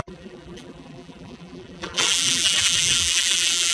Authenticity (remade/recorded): remade